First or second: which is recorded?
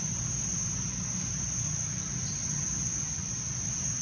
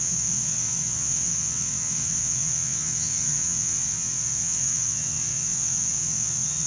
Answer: first